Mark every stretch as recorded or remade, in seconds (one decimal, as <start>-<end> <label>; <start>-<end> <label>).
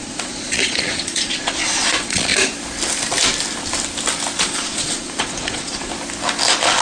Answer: 0.0-2.3 remade; 2.3-4.4 recorded; 4.4-5.9 remade; 5.9-6.8 recorded